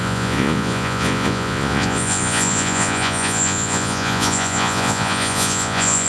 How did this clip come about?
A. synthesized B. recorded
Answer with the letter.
A